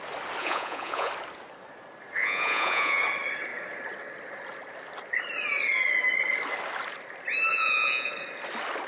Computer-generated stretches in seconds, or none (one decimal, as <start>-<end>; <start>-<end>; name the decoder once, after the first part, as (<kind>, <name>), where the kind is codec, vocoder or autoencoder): 0.4-1.1 (vocoder, Vocos); 2.2-3.0; 7.5-8.1